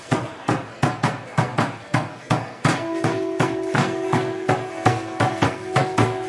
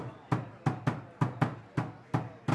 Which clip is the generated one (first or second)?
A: first